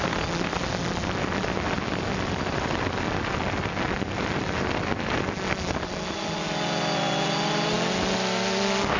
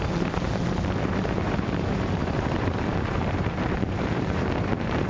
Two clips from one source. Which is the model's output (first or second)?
second